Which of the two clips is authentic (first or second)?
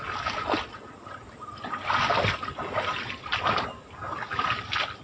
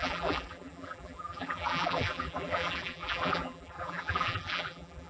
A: first